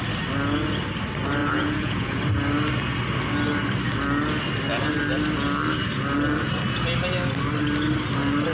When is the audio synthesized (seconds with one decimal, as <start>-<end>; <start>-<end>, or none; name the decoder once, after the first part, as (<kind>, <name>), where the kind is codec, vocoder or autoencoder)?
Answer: 1.4-2.2 (vocoder, Vocos)